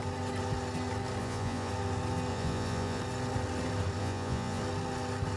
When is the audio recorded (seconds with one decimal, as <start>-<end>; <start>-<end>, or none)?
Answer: 0.0-1.2; 1.7-2.3; 3.0-4.0; 4.6-5.4

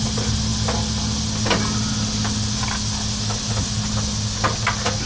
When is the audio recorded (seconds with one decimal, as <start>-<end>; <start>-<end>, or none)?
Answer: 0.0-5.1